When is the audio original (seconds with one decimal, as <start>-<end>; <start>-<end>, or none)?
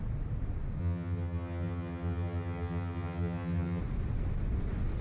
0.0-0.8; 3.8-5.0